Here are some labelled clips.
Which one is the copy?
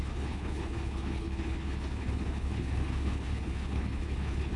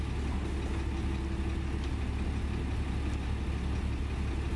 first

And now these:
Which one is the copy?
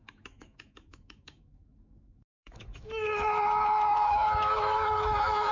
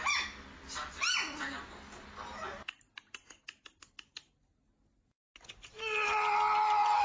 first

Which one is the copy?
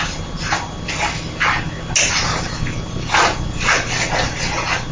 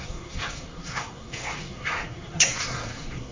second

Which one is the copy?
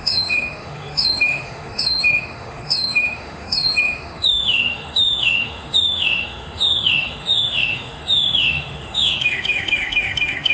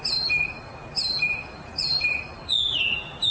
first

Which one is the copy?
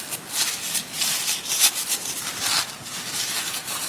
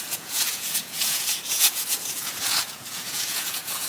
second